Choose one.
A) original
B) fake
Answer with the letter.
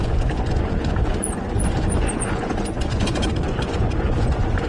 B